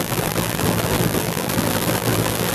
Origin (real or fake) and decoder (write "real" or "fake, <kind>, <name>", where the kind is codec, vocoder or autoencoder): fake, vocoder, BigVGAN v2